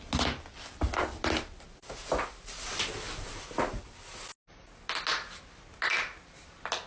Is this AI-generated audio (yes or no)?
no